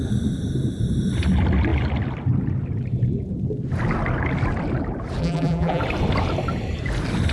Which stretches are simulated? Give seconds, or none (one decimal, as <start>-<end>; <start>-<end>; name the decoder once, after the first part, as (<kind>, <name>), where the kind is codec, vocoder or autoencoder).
5.2-5.8 (vocoder, BigVGAN v2)